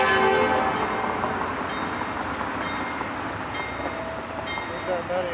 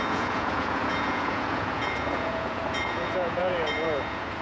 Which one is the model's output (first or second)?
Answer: second